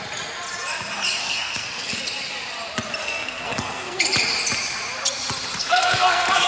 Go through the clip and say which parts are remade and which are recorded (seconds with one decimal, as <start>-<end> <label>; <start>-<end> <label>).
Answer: 0.0-1.2 recorded; 1.2-2.0 remade; 2.0-3.0 recorded; 3.0-4.0 remade; 4.0-5.6 recorded; 5.6-6.5 remade